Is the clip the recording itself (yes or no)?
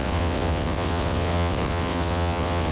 no